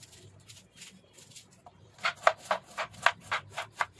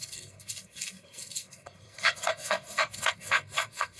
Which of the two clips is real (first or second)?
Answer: first